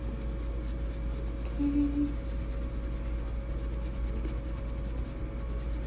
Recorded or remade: recorded